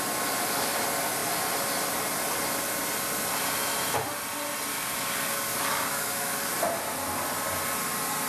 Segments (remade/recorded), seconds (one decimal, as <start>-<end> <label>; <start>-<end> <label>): 0.0-4.7 recorded; 4.7-6.5 remade; 6.5-8.3 recorded